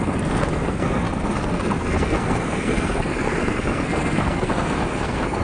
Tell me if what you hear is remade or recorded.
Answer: remade